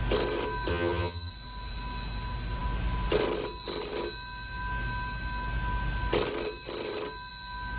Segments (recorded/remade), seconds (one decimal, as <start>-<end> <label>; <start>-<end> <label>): 0.0-0.7 recorded; 0.7-1.3 remade; 1.3-7.8 recorded